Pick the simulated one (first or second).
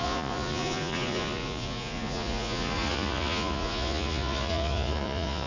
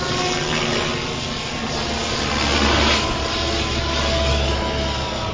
first